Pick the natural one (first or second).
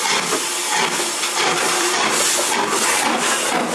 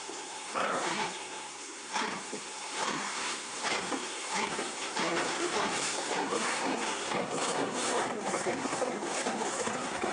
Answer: first